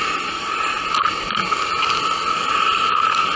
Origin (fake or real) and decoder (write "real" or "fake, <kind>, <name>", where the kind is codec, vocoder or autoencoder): real